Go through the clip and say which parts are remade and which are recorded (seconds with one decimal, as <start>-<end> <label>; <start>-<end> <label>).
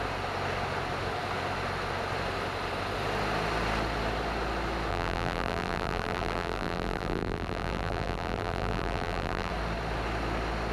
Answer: 0.0-4.9 recorded; 4.9-9.5 remade; 9.5-10.7 recorded